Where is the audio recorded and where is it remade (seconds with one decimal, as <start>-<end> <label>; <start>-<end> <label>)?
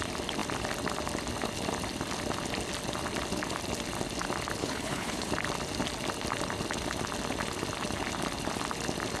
0.0-4.6 recorded; 4.6-5.3 remade; 5.3-9.2 recorded